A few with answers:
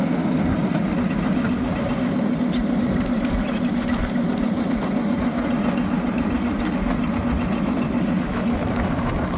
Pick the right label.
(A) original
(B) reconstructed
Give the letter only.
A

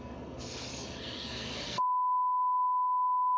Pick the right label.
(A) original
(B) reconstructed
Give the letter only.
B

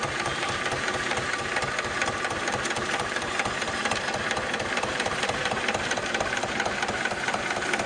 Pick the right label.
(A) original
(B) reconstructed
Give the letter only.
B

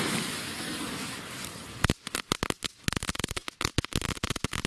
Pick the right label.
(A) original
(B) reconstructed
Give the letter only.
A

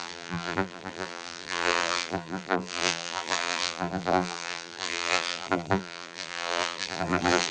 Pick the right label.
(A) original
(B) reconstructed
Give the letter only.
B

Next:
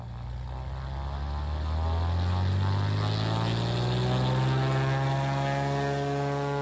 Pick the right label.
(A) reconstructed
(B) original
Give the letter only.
B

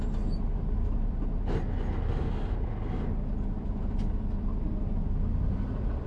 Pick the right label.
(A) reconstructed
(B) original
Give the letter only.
B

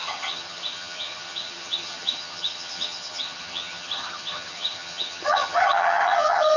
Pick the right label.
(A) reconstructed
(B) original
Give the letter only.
A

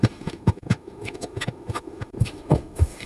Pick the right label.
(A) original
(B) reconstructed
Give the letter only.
B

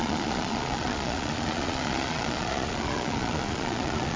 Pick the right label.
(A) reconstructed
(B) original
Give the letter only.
A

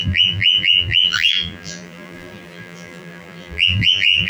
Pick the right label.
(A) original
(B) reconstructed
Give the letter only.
B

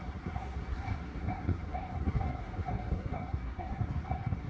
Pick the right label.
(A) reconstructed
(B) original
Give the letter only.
A